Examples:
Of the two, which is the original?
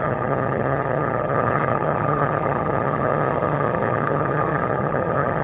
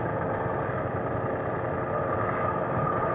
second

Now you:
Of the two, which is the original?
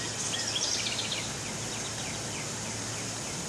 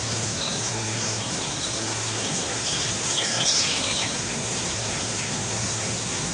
first